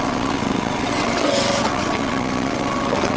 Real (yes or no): no